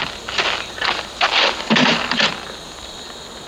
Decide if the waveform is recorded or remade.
recorded